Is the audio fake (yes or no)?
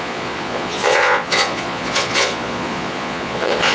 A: yes